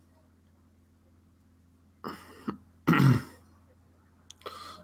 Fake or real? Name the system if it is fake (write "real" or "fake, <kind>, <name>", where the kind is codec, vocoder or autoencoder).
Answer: real